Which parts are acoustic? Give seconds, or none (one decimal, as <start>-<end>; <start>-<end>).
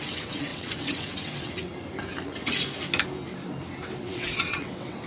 1.7-4.0